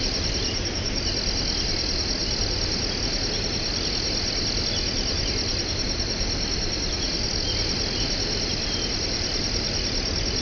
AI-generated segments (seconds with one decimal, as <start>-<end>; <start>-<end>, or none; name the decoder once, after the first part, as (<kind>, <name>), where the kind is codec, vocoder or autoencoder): none